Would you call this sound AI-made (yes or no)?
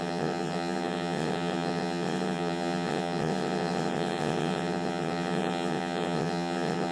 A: yes